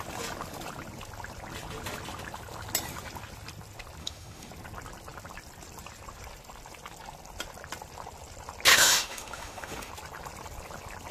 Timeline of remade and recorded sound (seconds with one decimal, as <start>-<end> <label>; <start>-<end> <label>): 0.0-4.0 recorded; 4.0-4.5 remade; 4.5-8.7 recorded; 8.7-9.9 remade; 9.9-11.1 recorded